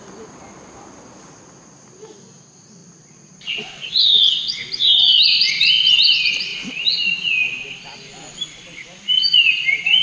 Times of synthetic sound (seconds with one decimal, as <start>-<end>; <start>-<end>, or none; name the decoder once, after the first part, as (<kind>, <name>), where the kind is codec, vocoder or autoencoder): none